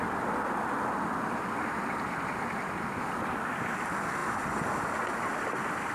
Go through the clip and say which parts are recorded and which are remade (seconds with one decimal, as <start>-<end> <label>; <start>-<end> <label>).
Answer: 0.0-5.9 recorded